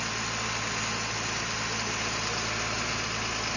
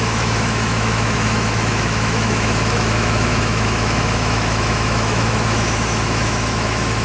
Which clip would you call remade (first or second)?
second